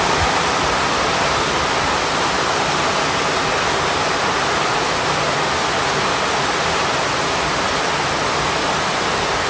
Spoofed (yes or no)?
no